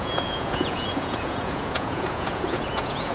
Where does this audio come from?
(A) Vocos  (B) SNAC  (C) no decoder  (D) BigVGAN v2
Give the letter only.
A